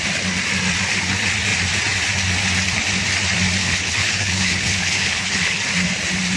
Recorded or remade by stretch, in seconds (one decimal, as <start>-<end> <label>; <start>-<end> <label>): 0.0-3.6 recorded; 3.6-5.6 remade; 5.6-6.4 recorded